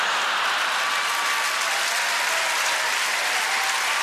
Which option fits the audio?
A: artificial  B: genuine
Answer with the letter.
B